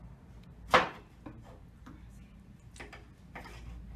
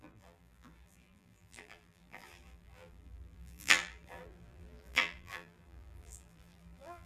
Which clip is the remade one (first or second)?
second